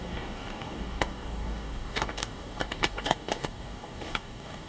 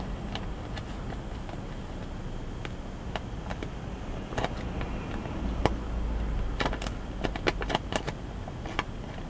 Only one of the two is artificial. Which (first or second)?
first